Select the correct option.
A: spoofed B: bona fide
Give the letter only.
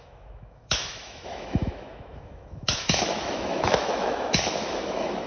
A